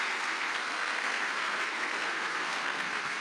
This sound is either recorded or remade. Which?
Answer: remade